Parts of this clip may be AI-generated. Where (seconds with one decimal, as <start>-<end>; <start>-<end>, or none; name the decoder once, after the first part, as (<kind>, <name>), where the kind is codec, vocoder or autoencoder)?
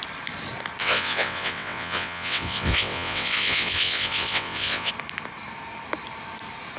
0.8-4.9 (vocoder, WaveNeXt)